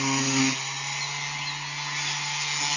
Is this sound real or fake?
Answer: real